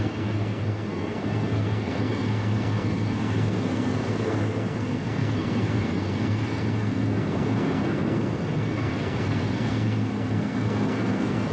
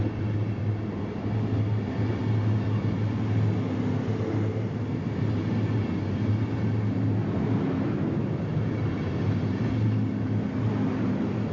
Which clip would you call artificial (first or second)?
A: first